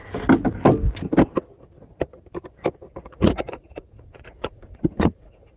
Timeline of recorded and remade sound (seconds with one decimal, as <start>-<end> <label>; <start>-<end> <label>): 0.0-2.9 recorded; 2.9-5.6 remade